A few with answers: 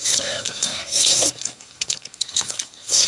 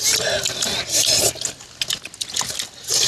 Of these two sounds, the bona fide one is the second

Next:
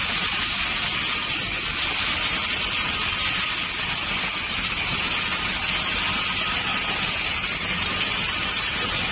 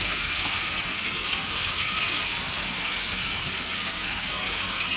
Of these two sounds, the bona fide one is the first